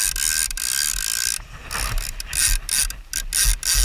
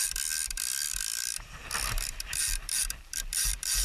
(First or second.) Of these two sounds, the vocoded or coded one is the second